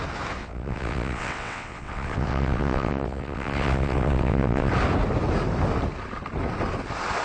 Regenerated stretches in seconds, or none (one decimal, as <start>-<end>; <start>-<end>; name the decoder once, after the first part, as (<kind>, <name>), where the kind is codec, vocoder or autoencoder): 0.4-4.7 (vocoder, WaveNeXt)